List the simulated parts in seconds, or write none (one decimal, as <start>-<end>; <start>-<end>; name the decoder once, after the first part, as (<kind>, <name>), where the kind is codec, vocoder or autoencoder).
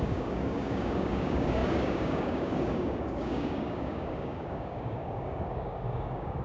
0.0-6.4 (codec, DAC)